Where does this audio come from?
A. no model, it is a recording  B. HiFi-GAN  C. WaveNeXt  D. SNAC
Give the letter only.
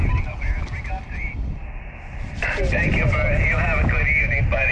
A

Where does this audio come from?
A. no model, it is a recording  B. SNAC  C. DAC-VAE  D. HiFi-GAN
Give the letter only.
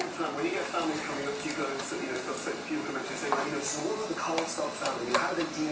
A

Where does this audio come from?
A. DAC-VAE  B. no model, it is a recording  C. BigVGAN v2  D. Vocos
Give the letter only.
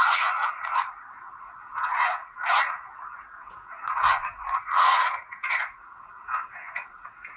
D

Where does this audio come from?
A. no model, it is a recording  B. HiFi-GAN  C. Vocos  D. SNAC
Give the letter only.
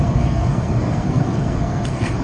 D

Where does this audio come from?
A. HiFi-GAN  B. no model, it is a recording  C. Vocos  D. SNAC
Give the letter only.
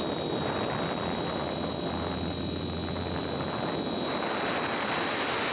B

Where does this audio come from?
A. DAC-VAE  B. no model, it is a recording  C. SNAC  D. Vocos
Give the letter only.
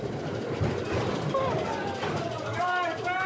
B